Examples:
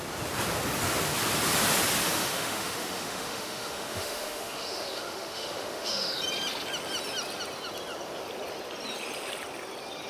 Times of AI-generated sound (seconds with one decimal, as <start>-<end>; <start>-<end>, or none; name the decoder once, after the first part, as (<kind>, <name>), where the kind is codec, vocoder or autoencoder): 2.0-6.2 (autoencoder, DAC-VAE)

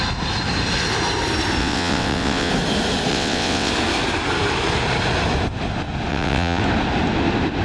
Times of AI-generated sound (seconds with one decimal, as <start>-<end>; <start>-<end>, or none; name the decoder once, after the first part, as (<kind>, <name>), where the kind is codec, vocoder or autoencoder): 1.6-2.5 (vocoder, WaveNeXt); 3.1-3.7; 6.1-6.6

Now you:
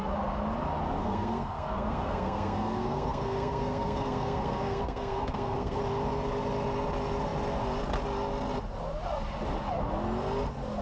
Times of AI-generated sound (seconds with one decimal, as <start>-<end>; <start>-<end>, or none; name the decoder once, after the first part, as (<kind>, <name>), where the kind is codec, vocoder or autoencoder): 1.0-5.8 (codec, SNAC)

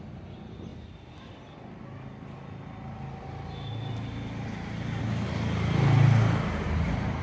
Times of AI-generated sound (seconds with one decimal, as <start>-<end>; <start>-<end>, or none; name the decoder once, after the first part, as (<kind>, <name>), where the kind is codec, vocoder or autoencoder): none

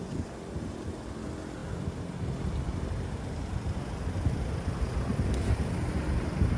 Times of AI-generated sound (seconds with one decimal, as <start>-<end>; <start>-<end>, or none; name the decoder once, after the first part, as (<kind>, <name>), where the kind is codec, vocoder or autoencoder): 0.0-6.6 (vocoder, BigVGAN v2)